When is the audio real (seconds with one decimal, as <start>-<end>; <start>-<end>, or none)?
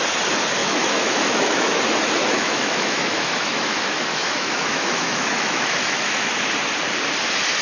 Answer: 0.0-0.6; 1.8-2.2; 6.3-7.6